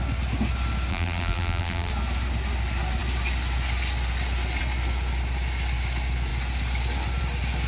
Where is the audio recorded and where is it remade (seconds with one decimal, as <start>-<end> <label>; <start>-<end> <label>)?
0.0-0.9 recorded; 0.9-1.9 remade; 1.9-7.7 recorded